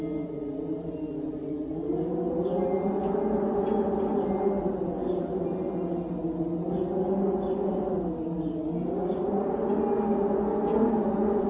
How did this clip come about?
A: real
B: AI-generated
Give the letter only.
A